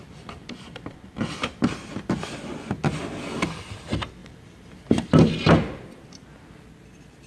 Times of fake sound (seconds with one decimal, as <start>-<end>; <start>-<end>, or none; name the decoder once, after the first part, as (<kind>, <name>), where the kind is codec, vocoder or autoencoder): 0.4-2.2 (vocoder, BigVGAN v2); 4.2-5.5